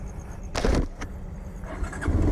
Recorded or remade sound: recorded